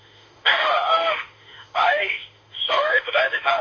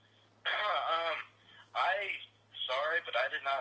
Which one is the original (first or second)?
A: second